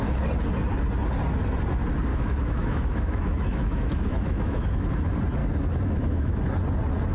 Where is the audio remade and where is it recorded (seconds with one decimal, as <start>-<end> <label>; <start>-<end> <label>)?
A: 0.0-2.1 recorded; 2.1-4.9 remade; 4.9-5.4 recorded; 5.4-6.4 remade; 6.4-7.1 recorded